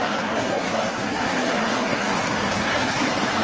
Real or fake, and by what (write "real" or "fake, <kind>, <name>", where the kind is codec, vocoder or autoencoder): fake, codec, SNAC